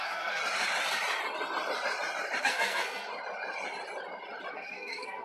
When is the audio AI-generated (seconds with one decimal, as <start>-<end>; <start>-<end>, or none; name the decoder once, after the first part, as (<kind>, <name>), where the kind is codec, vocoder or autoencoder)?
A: 0.0-0.4 (codec, SNAC); 2.4-3.1; 4.5-5.2